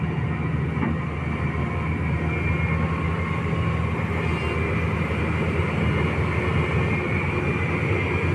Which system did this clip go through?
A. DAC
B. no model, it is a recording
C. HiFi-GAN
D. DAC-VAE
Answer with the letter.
B